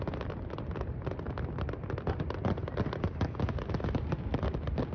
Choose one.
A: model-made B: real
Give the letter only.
B